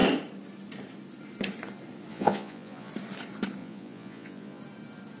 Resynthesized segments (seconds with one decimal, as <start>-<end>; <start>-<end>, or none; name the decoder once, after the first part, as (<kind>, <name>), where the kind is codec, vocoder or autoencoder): 2.1-2.9 (vocoder, Vocos); 3.6-4.6